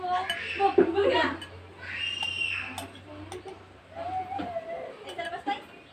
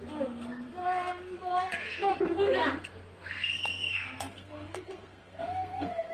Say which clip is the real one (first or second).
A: first